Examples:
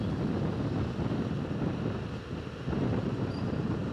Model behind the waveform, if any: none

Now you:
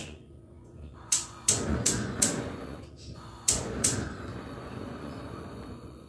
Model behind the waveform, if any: vocoder, Vocos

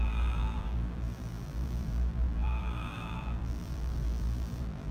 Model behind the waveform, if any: vocoder, BigVGAN v2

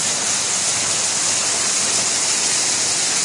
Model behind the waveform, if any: none